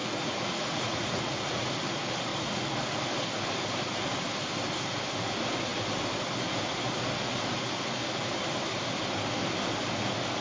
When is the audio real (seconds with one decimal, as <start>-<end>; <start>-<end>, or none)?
1.7-2.3; 3.0-10.4